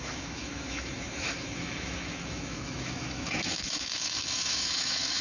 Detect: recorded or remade remade